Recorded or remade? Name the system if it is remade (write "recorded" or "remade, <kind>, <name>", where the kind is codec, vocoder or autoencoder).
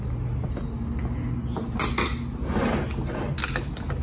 recorded